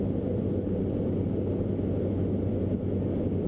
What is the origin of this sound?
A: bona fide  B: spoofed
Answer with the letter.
A